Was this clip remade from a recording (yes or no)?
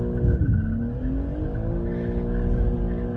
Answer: no